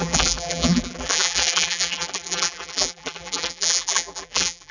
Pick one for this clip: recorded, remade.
remade